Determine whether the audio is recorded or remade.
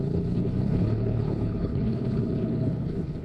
remade